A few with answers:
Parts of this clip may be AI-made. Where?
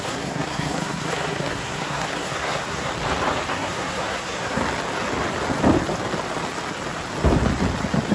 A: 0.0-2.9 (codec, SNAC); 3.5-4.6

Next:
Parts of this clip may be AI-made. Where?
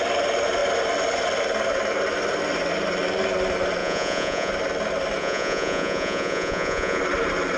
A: 3.8-4.5 (vocoder, Vocos); 5.2-7.0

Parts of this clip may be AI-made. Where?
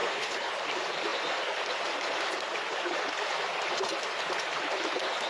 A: 0.0-0.5 (codec, HILCodec)